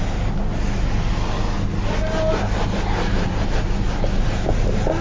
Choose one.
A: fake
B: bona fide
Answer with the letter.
B